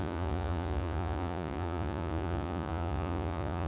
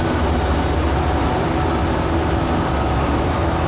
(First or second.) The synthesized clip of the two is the first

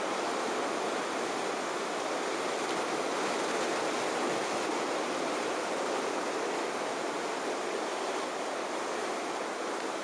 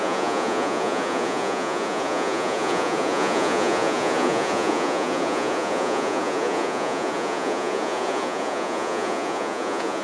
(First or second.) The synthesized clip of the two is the second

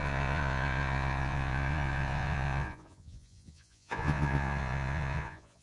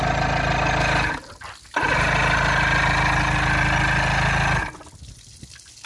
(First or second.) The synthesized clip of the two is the first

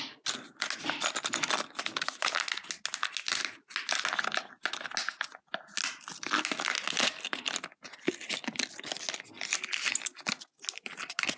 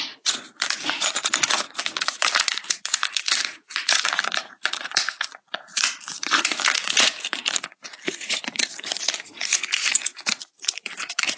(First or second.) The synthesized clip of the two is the second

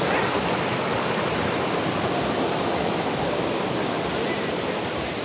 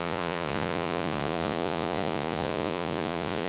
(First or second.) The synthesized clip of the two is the second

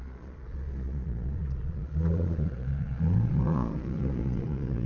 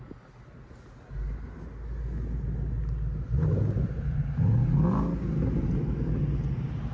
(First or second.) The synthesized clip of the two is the first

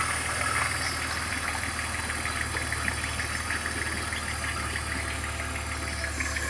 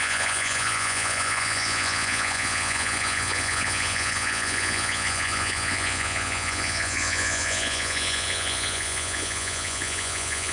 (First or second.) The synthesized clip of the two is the second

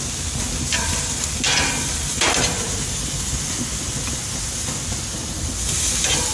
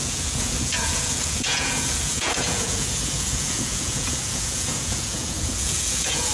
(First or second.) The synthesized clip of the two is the second